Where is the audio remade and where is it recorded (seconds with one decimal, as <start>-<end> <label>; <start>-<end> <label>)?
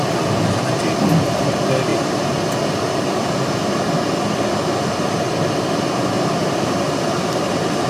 0.0-1.9 recorded; 1.9-3.3 remade; 3.3-6.4 recorded; 6.4-7.5 remade; 7.5-7.9 recorded